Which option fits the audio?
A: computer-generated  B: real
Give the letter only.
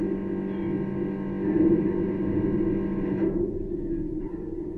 B